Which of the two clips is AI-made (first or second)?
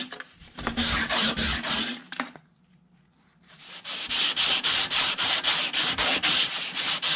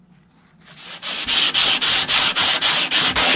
first